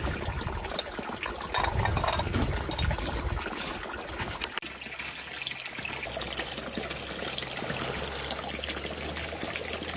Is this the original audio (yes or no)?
yes